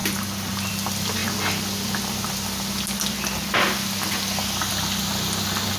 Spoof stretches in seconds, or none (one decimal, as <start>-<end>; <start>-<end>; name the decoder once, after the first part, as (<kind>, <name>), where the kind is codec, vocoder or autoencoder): none